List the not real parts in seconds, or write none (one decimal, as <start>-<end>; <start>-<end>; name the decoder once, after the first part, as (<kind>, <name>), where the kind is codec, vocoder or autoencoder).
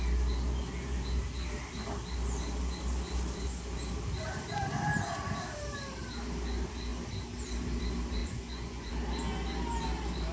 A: 8.2-8.9 (vocoder, Vocos)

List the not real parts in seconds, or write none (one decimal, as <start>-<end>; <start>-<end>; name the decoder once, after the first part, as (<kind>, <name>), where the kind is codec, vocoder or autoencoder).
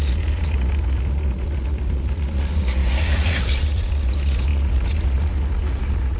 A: 0.0-6.2 (vocoder, Vocos)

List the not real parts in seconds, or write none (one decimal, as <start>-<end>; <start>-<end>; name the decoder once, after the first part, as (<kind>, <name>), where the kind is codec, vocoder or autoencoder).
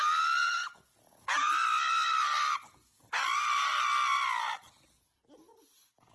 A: 0.4-1.5 (vocoder, Vocos)